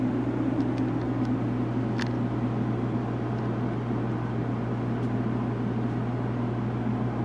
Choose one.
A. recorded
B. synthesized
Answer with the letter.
A